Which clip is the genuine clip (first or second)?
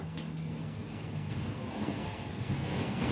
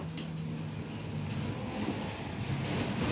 second